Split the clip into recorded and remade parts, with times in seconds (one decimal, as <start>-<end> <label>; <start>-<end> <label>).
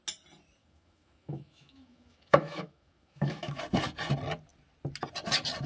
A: 0.0-0.6 recorded; 0.6-3.6 remade; 3.6-5.7 recorded